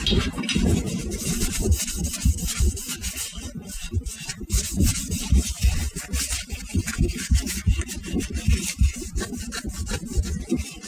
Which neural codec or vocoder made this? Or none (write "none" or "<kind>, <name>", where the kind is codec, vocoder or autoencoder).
none